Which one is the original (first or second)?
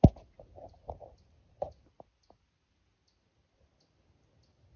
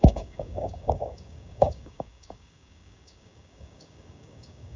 first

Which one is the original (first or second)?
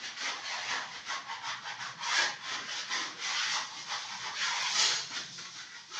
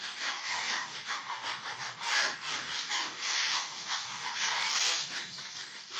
first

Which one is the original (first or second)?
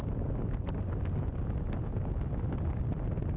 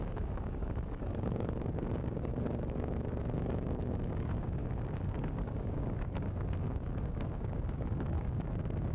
first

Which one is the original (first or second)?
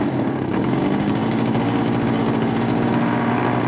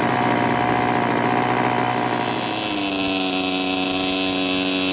second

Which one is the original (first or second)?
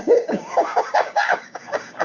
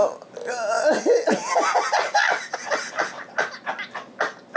second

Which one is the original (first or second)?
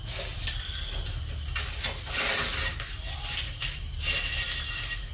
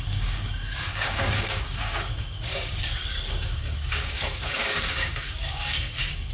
first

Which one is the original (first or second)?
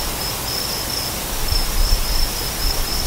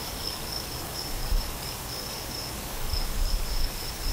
first